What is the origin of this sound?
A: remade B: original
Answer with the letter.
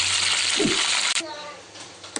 B